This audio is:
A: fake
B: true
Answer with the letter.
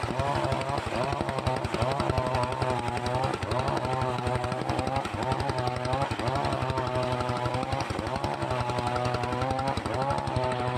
B